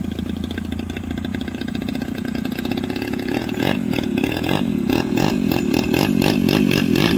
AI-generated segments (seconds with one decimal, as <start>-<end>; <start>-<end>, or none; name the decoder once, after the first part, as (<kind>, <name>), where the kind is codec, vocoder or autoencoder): 1.3-5.6 (vocoder, Vocos)